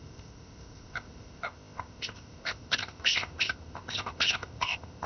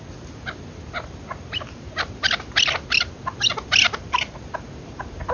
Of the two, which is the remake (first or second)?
first